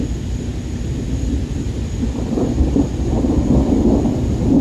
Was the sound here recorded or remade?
recorded